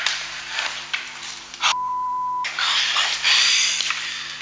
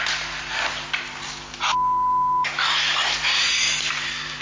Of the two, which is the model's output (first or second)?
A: first